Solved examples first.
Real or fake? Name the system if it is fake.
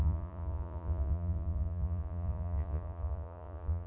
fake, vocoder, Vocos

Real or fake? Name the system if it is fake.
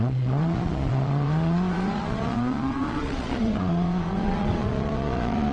fake, vocoder, Vocos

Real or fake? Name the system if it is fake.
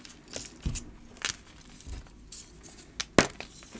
real